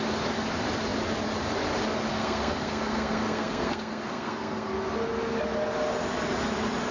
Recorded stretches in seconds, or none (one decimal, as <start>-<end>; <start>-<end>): 0.0-2.1; 4.7-6.9